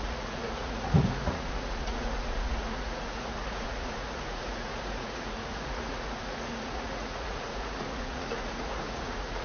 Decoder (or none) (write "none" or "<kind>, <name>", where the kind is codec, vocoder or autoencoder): vocoder, Vocos